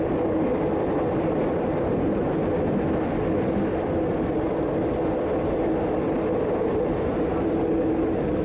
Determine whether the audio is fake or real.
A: real